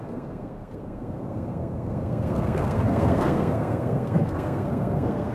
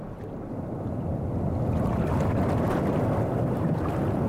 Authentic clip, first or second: second